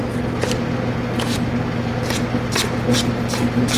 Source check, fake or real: real